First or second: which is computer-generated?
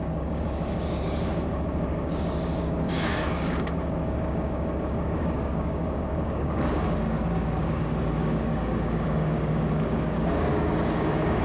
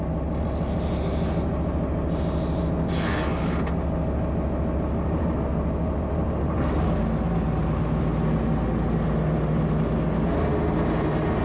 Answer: first